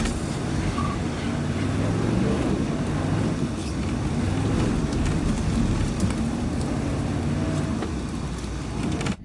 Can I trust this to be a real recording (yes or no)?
yes